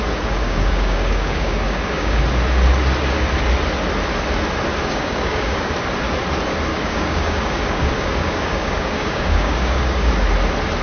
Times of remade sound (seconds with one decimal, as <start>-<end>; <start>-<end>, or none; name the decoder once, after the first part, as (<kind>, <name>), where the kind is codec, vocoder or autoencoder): 0.4-2.2 (codec, DAC); 4.8-5.7; 6.7-10.1